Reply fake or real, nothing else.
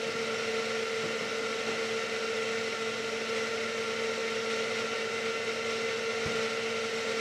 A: real